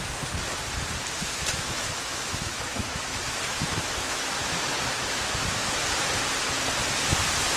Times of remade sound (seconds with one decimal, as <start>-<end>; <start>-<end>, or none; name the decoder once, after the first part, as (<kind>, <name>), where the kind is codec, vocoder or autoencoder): 1.2-5.8 (autoencoder, DAC-VAE)